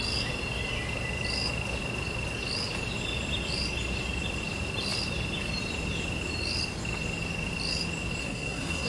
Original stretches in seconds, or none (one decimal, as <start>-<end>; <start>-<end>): 0.0-8.2